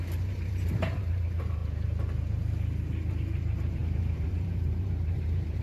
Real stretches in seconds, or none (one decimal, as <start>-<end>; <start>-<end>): 1.6-3.1